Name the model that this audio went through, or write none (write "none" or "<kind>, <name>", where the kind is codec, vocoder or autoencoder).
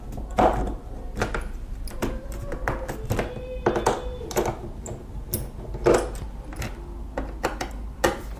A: none